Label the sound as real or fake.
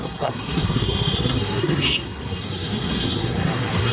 fake